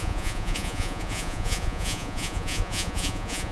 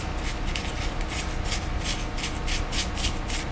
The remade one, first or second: first